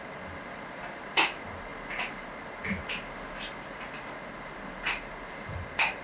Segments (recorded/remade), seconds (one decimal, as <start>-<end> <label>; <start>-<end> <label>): 0.0-6.0 recorded